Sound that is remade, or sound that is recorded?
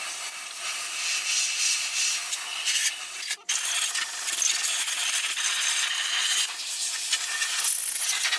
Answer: recorded